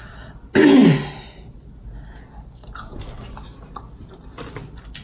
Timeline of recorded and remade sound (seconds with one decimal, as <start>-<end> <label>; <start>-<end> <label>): 0.0-5.0 recorded